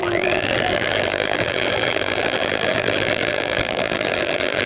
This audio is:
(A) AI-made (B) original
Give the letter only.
A